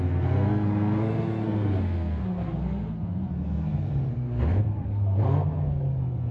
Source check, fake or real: fake